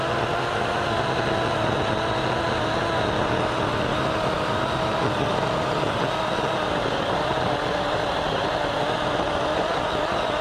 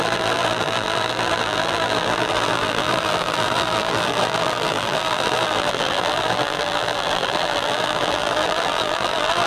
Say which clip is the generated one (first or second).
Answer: second